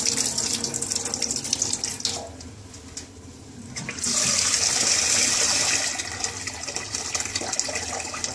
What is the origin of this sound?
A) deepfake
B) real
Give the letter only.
B